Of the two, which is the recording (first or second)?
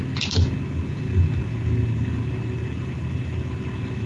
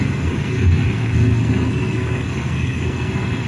first